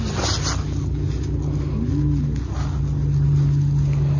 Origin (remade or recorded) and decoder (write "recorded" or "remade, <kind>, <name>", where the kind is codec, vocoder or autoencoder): recorded